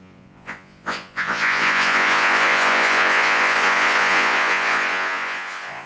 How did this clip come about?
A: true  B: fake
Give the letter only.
B